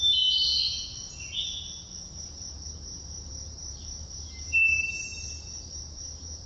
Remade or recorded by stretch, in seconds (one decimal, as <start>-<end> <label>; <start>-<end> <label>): 0.0-0.5 remade; 0.5-2.2 recorded; 2.2-5.1 remade; 5.1-5.6 recorded; 5.6-6.5 remade